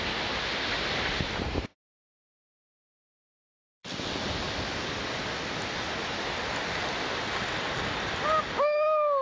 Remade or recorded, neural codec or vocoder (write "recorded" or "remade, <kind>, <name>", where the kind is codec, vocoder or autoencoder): recorded